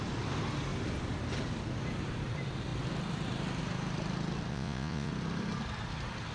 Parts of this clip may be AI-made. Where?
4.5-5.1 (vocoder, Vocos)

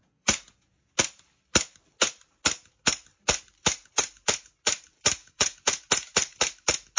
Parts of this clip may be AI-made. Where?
0.0-0.9 (vocoder, Vocos); 5.2-5.9